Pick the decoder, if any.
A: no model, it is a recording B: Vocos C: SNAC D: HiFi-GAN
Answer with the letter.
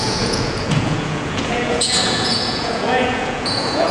B